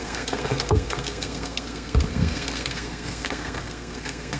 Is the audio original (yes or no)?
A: no